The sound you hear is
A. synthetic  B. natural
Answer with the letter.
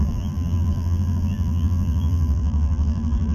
A